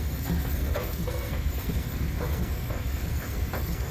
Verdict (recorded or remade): remade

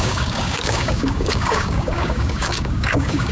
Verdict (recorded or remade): remade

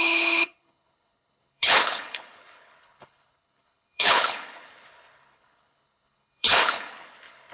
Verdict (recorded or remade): remade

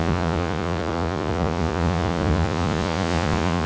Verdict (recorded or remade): remade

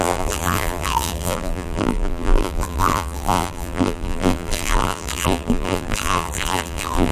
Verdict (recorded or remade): remade